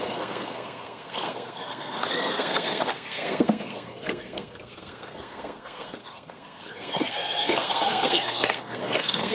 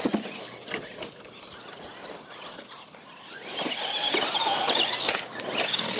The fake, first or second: first